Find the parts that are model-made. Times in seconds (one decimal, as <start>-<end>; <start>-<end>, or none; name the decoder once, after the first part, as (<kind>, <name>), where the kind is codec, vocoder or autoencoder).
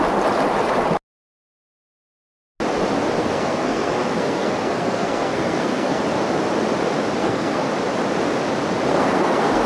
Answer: 3.2-6.0 (codec, SNAC); 7.2-7.7; 8.9-9.7